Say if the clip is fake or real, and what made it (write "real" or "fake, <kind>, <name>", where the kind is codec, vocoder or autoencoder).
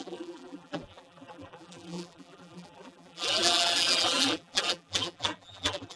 fake, vocoder, BigVGAN v2